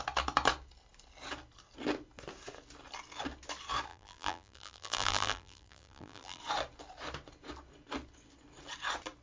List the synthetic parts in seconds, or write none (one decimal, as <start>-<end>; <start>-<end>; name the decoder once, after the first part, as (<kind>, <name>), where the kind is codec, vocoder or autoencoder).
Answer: 3.9-6.4 (vocoder, BigVGAN v2)